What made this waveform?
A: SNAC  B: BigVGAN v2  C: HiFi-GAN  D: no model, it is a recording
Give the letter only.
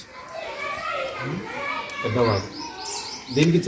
D